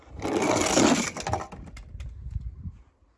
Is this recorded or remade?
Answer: recorded